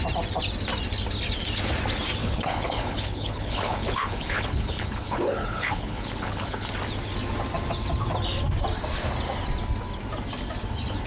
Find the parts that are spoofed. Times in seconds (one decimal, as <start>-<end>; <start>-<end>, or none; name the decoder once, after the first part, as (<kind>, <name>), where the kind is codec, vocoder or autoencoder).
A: 2.2-6.7 (codec, HILCodec)